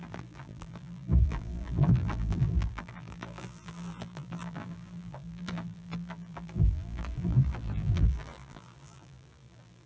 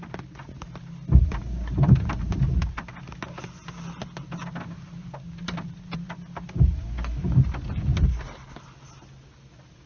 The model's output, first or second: first